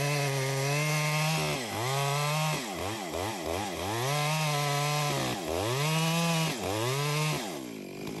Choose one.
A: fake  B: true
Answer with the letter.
B